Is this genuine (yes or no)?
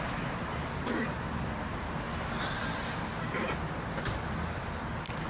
yes